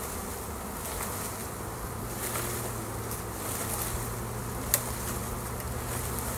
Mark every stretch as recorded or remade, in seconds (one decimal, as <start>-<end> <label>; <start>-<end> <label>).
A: 0.0-1.4 recorded; 1.4-2.2 remade; 2.2-6.4 recorded